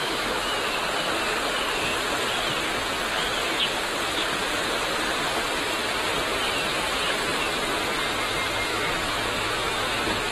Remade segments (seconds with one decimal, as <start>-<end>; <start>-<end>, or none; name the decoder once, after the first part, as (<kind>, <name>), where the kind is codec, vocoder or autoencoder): 0.0-0.7 (autoencoder, DAC-VAE); 8.7-10.3